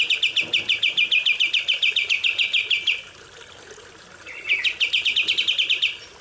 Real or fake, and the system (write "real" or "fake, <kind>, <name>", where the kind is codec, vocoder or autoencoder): real